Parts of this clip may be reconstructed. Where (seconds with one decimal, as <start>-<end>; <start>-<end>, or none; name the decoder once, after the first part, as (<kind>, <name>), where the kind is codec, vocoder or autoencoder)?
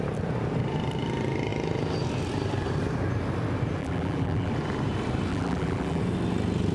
3.8-4.5 (vocoder, BigVGAN v2); 5.3-6.0